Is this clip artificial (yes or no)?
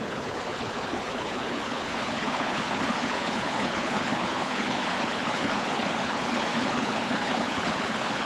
yes